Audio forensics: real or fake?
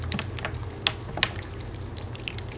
real